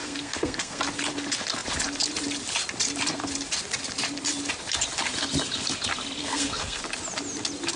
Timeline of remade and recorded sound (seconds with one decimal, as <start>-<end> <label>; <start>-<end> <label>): 0.0-0.8 remade; 0.8-6.2 recorded; 6.2-6.8 remade; 6.8-7.8 recorded